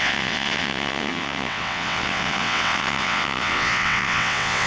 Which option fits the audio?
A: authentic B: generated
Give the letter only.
B